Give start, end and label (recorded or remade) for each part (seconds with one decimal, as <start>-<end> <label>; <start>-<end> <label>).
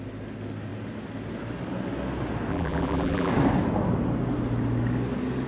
0.0-2.5 recorded; 2.5-3.3 remade; 3.3-5.5 recorded